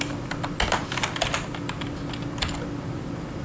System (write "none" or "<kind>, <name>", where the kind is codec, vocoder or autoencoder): none